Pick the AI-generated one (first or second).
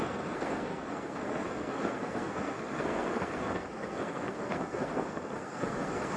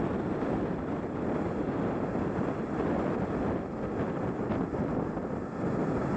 first